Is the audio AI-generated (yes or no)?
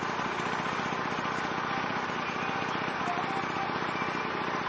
no